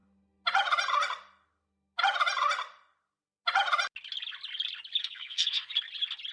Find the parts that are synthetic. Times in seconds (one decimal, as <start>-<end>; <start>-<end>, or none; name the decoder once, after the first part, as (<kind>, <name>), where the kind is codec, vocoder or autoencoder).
5.0-5.7 (codec, SNAC)